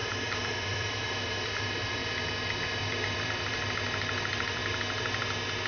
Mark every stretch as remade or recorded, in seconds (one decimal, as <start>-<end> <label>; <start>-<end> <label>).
0.0-2.0 remade; 2.0-2.8 recorded; 2.8-4.6 remade; 4.6-5.7 recorded